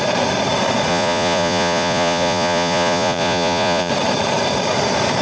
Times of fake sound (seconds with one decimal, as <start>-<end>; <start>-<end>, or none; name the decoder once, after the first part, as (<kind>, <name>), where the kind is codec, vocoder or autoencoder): 0.9-3.9 (vocoder, Vocos)